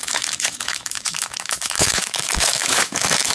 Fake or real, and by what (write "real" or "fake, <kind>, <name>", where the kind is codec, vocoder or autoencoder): fake, autoencoder, DAC-VAE